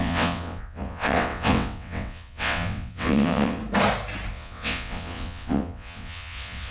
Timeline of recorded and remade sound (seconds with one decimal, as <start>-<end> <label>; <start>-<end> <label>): 0.0-3.6 remade; 3.6-4.3 recorded; 4.3-6.7 remade